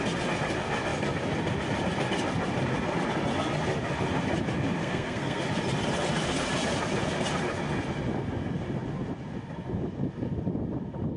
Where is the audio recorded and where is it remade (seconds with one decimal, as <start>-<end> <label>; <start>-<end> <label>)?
0.0-4.8 recorded; 4.8-5.4 remade; 5.4-11.2 recorded